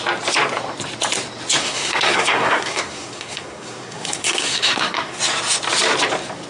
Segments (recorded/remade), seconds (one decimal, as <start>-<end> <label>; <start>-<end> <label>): 0.0-1.6 recorded; 1.6-5.2 remade; 5.2-6.5 recorded